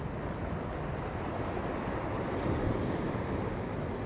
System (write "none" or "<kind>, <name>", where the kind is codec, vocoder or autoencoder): none